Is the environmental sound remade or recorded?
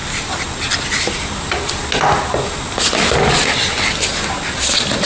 recorded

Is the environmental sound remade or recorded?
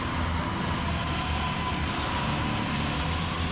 recorded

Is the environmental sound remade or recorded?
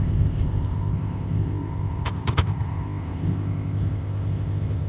remade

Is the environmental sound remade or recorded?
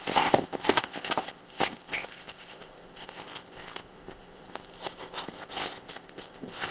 remade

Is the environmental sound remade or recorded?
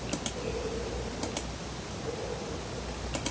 recorded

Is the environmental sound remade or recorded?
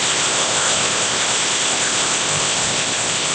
remade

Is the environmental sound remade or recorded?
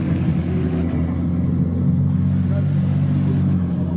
recorded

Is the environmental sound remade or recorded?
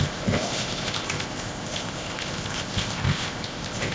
remade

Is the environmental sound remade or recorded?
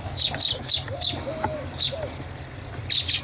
recorded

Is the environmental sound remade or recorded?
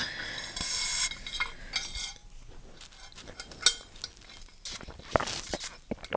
recorded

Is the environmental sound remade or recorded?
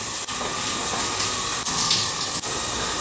recorded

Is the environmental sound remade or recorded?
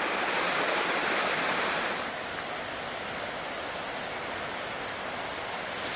recorded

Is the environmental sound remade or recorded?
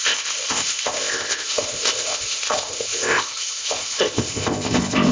remade